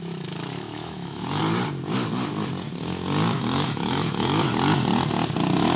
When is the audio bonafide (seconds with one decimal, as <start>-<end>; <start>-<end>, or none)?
1.4-3.4; 4.5-5.8